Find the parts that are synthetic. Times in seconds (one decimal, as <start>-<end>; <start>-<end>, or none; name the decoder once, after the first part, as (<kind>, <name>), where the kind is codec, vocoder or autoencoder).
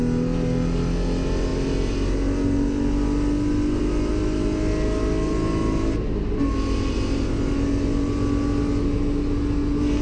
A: none